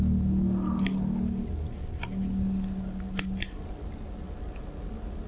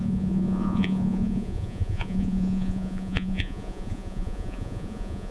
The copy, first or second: second